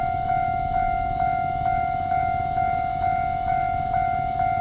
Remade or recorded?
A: remade